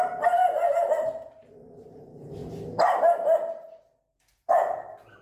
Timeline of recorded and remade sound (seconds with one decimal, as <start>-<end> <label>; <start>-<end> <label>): 0.0-5.2 recorded